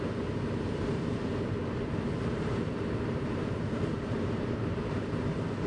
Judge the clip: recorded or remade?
remade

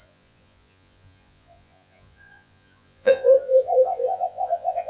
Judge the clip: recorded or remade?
remade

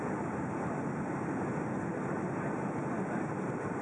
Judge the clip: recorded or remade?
recorded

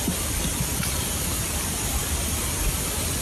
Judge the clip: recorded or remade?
recorded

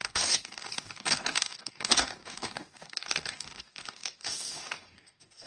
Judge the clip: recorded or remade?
remade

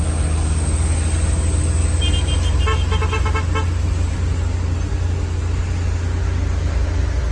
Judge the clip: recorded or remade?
recorded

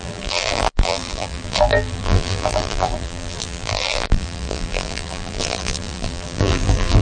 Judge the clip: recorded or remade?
remade